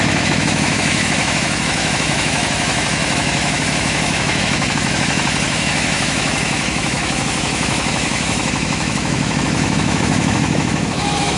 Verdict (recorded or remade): remade